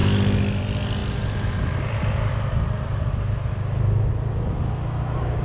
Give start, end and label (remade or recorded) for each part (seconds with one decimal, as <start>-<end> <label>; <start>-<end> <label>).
0.0-5.4 recorded